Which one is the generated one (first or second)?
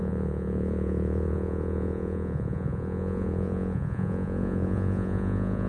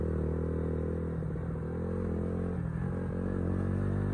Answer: first